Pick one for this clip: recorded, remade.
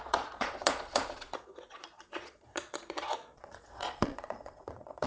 remade